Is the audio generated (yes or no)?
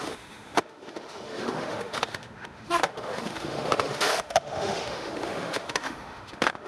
yes